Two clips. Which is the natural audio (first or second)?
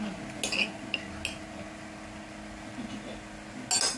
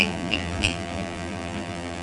first